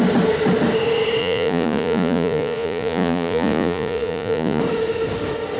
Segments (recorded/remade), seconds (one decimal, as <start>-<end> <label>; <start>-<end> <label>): 0.0-1.2 recorded; 1.2-4.6 remade; 4.6-5.6 recorded